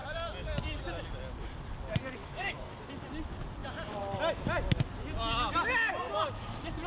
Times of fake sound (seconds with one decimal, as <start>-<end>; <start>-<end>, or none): 2.2-2.7